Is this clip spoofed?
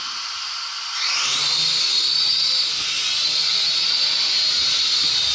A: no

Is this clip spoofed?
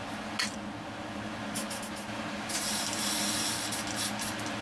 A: no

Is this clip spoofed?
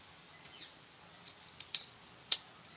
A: no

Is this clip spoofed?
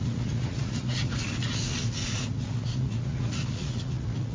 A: yes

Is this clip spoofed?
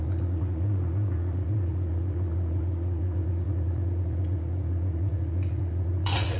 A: yes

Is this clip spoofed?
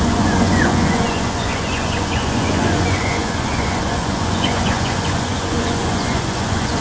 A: yes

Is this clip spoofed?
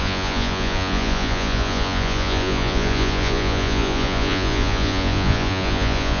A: yes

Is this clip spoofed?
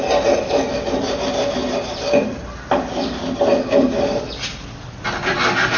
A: no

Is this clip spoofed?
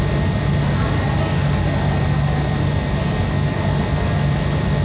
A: no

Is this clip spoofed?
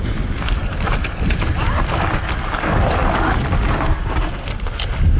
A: no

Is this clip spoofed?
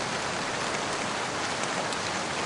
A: no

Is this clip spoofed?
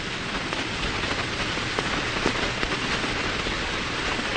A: yes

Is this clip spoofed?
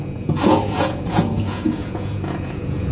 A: yes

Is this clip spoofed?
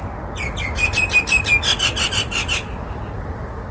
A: no